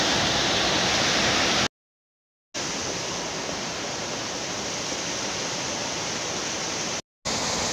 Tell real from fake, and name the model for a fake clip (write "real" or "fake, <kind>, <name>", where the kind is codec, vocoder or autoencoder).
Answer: real